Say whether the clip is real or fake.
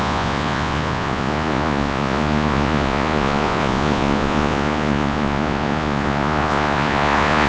fake